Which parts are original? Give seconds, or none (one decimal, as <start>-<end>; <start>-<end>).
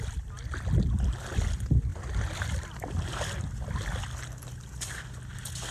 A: 0.0-5.7